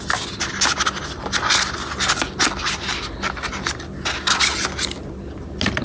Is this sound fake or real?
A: real